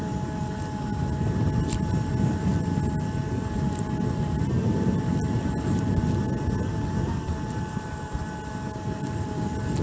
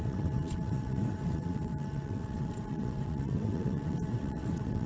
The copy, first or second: second